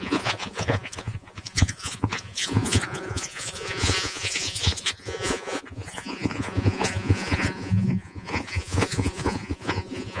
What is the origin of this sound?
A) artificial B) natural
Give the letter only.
A